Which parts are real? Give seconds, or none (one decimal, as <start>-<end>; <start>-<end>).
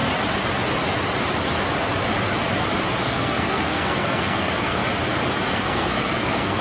0.0-3.0; 4.8-5.5